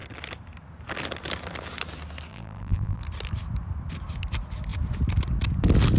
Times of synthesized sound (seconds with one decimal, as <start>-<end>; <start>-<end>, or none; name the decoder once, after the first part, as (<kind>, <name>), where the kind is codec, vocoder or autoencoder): 2.3-3.0 (vocoder, BigVGAN v2)